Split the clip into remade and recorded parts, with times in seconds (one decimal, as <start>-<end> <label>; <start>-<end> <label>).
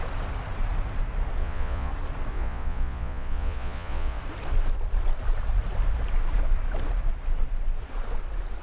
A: 0.0-1.4 recorded; 1.4-1.9 remade; 1.9-2.3 recorded; 2.3-4.2 remade; 4.2-8.6 recorded